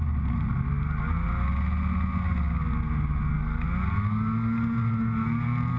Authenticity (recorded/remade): recorded